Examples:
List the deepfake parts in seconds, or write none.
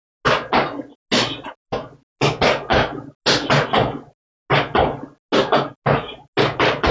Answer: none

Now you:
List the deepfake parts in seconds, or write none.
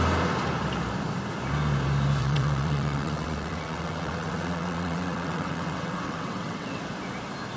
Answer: 2.2-6.8 (vocoder, WaveNeXt)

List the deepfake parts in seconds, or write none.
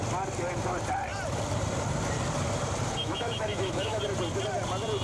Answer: 3.0-4.0 (autoencoder, DAC-VAE)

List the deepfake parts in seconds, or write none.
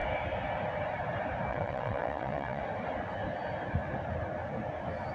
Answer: 1.5-2.6 (vocoder, WaveNeXt)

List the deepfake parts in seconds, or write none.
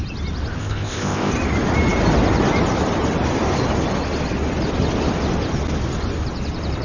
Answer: 0.6-1.3 (codec, ZipCodec)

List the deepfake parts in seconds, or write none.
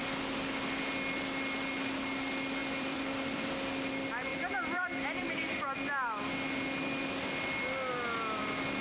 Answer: 2.6-3.5 (vocoder, BigVGAN v2); 4.3-5.3